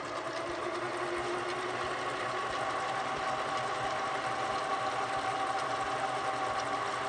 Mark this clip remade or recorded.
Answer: recorded